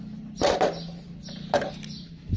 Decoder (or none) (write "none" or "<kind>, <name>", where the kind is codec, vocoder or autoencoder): none